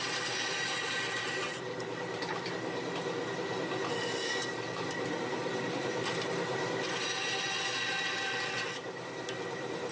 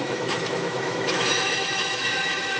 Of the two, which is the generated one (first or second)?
second